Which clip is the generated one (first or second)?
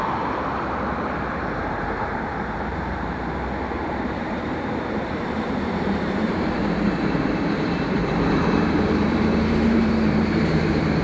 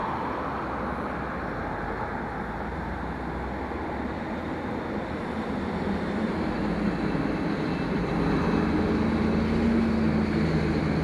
first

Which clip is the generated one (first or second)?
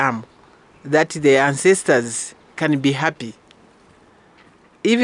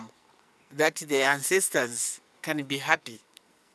second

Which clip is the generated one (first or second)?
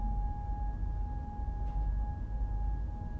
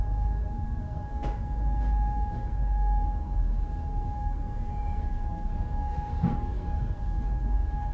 second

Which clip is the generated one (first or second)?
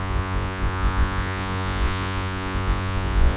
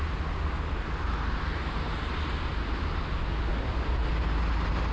first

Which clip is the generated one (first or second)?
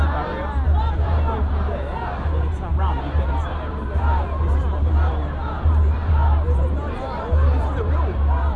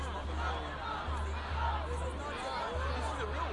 first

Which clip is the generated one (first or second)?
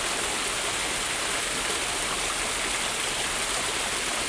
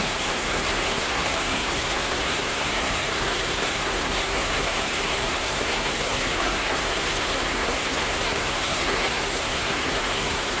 second